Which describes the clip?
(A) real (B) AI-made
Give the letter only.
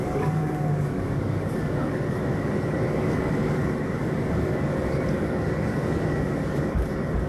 B